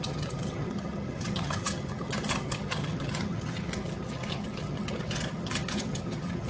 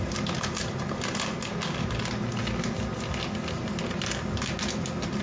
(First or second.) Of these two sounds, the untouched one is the second